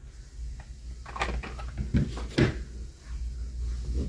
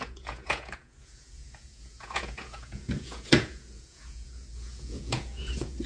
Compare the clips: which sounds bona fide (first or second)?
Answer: first